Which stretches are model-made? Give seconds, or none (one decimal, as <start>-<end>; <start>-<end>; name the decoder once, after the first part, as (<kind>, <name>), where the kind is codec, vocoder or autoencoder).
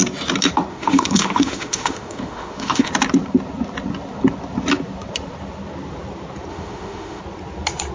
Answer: 0.7-2.9 (autoencoder, DAC-VAE); 6.5-7.2